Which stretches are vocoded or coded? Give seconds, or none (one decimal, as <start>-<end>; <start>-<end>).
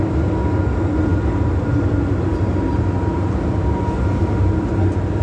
none